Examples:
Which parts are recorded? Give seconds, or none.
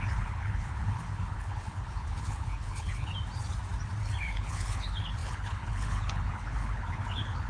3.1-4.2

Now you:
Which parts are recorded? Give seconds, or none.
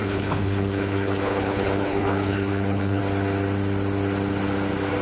3.0-5.0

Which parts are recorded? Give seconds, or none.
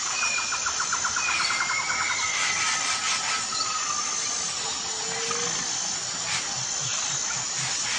0.0-8.0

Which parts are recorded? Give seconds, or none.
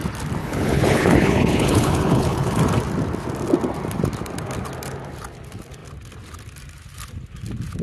0.0-0.4; 2.6-7.8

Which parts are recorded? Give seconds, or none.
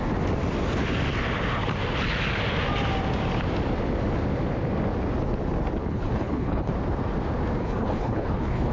0.0-5.8; 6.7-7.6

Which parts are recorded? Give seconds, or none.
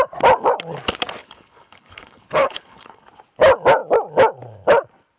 0.0-1.2; 3.0-5.2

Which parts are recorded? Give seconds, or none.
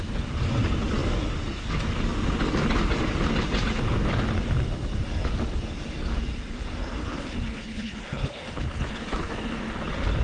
0.0-7.0; 9.0-10.2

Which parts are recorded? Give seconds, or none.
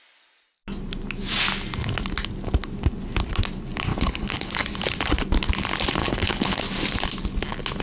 0.0-3.9; 4.6-6.0; 6.6-7.8